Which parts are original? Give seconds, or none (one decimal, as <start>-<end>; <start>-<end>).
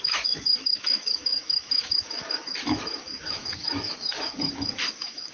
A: none